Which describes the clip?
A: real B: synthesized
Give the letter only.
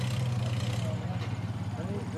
A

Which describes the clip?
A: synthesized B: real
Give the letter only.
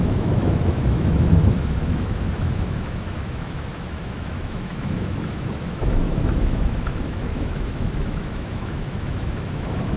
A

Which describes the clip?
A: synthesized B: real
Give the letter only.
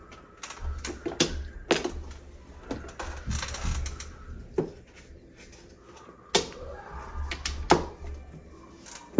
B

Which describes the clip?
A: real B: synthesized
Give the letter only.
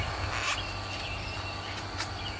A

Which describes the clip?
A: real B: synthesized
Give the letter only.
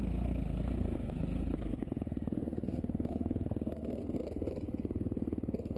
B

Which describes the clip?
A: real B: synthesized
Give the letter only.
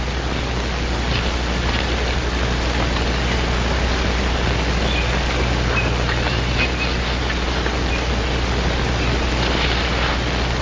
A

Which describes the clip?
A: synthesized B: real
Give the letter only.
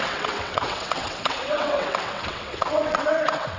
A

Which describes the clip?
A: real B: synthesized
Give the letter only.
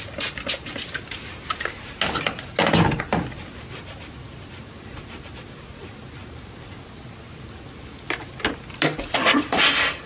A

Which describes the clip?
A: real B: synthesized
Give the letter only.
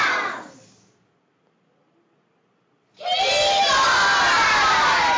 A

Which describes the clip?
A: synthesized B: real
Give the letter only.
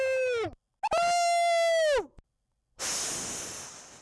B